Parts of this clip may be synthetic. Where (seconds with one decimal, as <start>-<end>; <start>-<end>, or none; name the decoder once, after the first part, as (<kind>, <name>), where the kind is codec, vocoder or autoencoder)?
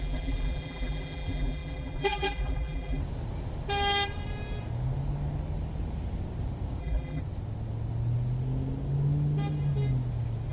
0.0-3.0 (vocoder, BigVGAN v2); 6.8-7.2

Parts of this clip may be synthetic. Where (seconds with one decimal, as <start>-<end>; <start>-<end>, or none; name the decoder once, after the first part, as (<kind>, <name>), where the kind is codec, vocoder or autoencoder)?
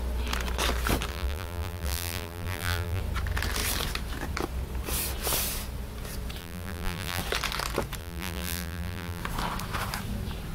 1.1-3.0 (vocoder, BigVGAN v2); 6.4-7.2; 8.0-9.2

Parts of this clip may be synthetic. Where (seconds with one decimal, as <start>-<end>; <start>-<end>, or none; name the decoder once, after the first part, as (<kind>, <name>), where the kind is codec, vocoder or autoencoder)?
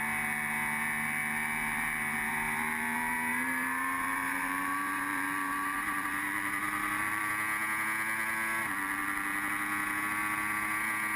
3.3-7.3 (vocoder, BigVGAN v2)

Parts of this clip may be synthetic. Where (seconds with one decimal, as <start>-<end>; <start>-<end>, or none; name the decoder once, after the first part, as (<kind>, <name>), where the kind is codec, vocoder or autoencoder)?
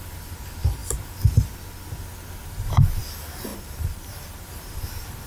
2.4-3.0 (vocoder, BigVGAN v2); 3.5-4.5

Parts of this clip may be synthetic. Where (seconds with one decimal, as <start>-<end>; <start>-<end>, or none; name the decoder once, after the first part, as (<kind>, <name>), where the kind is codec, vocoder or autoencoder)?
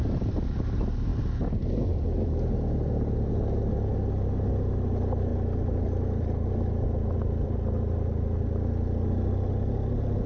none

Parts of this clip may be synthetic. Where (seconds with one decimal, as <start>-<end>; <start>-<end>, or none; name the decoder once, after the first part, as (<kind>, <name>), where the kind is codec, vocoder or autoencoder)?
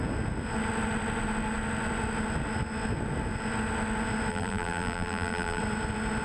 4.3-5.6 (vocoder, BigVGAN v2)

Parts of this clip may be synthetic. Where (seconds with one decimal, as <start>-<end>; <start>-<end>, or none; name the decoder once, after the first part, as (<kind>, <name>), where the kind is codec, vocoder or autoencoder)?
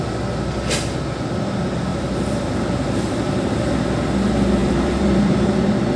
1.9-3.7 (vocoder, BigVGAN v2); 4.6-5.6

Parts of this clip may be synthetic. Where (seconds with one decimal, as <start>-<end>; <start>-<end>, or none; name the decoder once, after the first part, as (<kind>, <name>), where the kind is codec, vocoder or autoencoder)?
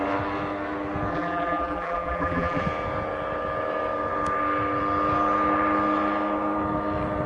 1.1-2.6 (vocoder, BigVGAN v2)